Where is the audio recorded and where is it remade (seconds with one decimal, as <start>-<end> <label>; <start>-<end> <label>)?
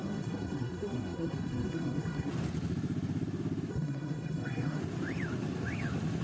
0.0-2.3 remade; 2.3-3.7 recorded; 3.7-4.8 remade; 4.8-6.2 recorded